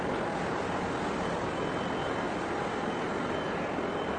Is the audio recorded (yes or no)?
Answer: yes